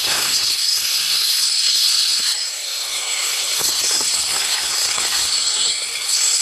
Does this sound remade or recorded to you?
remade